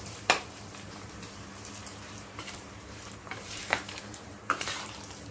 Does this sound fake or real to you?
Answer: fake